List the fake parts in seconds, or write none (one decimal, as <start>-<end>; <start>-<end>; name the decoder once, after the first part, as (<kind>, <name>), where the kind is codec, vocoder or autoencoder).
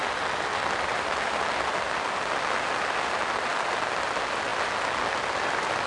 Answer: none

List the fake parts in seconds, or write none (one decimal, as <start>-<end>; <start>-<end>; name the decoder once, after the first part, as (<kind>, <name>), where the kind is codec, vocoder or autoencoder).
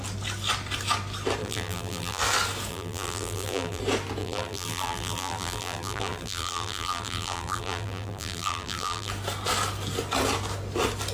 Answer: 1.4-2.2 (vocoder, BigVGAN v2); 2.7-3.8; 4.2-9.1